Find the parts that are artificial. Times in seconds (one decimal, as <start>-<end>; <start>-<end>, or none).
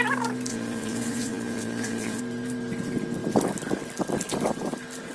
0.5-2.2